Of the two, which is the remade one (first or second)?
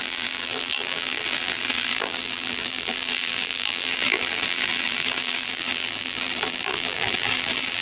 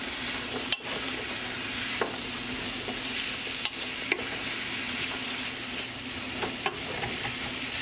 first